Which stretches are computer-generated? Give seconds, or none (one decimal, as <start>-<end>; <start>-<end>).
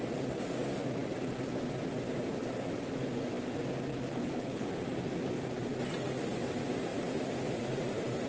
3.9-4.7